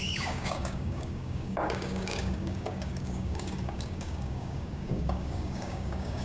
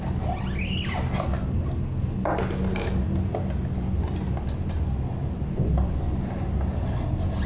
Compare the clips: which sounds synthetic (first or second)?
first